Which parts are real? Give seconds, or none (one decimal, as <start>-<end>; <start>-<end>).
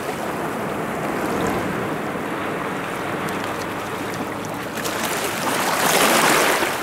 0.0-6.8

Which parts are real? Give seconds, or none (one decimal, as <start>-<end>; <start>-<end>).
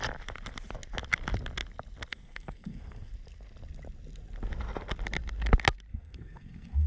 0.0-2.1; 3.1-5.9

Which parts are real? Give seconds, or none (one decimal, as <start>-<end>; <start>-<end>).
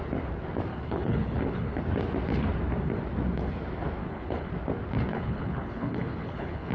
0.0-0.7; 1.8-4.0; 4.5-5.1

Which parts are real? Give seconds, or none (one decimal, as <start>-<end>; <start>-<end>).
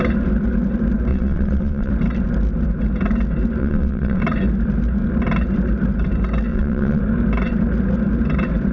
0.0-1.1; 1.9-3.6; 4.2-6.5; 7.0-8.7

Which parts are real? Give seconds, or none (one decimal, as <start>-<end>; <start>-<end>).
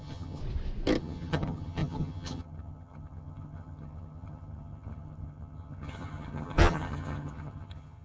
0.4-1.0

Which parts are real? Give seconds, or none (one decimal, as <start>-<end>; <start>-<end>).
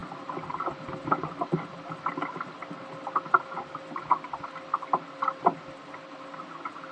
0.0-6.9